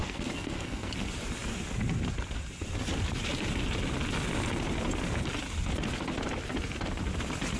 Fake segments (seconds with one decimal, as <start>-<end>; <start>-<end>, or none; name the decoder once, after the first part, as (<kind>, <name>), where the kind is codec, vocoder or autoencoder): 0.0-0.9 (codec, SNAC)